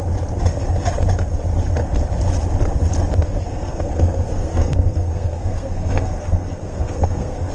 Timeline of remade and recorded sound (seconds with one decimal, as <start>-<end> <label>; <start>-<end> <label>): 0.0-3.5 recorded; 3.5-7.5 remade